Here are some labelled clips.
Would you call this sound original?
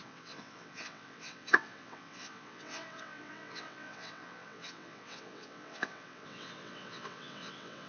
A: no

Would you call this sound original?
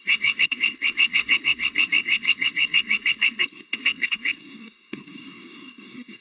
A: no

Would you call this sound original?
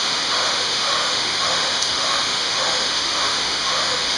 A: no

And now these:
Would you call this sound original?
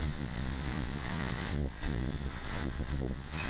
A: no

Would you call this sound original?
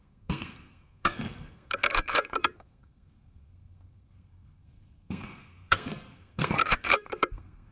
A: no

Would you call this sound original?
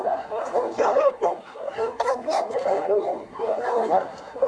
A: no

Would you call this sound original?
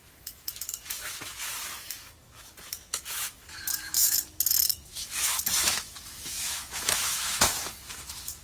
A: no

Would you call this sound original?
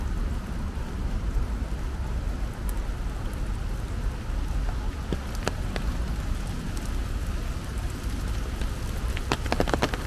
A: yes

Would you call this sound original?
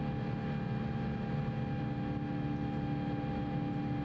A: yes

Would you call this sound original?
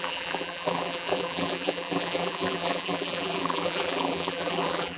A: no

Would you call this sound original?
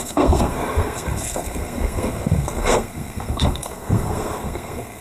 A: no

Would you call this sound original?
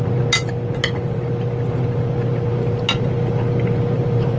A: yes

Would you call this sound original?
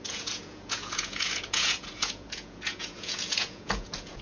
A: no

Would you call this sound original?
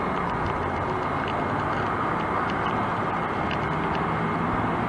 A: yes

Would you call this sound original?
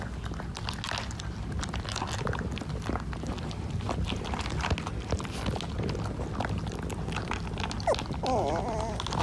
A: yes